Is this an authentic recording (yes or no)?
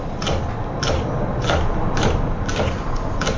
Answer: yes